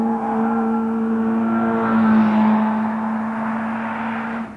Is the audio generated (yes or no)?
no